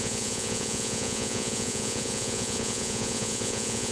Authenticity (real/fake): fake